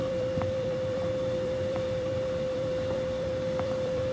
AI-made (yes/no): yes